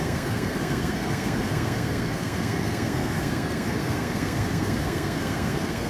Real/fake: fake